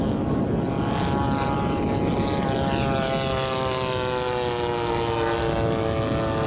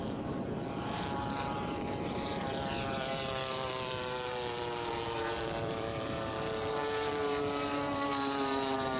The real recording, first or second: first